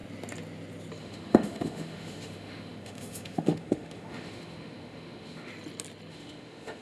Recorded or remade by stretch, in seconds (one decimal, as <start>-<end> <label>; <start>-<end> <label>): 0.0-1.0 recorded; 1.0-5.5 remade; 5.5-6.1 recorded; 6.1-6.8 remade